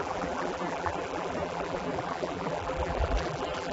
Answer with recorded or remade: remade